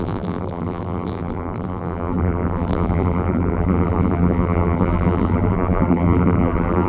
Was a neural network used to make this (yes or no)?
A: yes